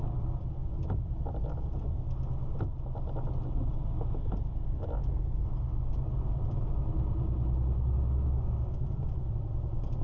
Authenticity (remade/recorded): recorded